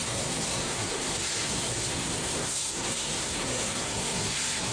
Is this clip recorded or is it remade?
remade